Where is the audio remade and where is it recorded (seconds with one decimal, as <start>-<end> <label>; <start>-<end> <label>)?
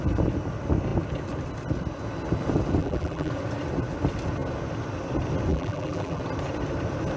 0.0-2.8 recorded; 2.8-3.3 remade; 3.3-5.5 recorded; 5.5-6.2 remade; 6.2-7.2 recorded